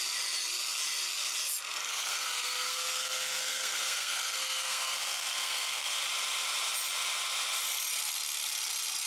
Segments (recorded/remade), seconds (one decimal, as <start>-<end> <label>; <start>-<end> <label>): 0.0-1.9 recorded; 1.9-6.0 remade; 6.0-9.1 recorded